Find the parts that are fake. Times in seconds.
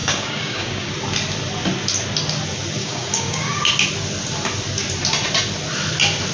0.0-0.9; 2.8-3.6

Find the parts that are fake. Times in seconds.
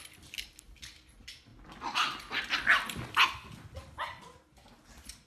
none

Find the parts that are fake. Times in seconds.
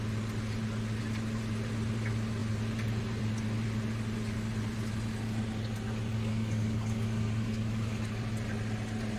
6.1-8.0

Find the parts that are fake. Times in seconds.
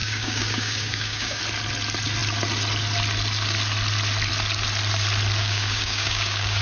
0.0-1.4; 5.4-6.6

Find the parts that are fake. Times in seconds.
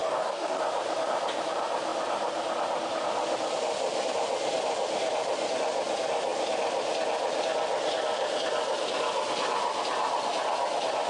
0.0-0.6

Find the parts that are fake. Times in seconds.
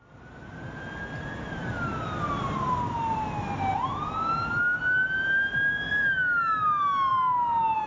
none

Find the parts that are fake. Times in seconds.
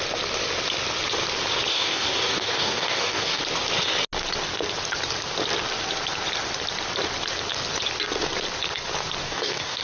1.7-3.4; 9.2-9.8